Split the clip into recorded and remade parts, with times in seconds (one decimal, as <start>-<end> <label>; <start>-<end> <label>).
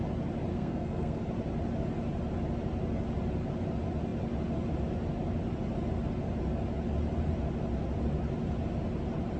0.0-0.5 recorded; 0.5-1.2 remade; 1.2-9.4 recorded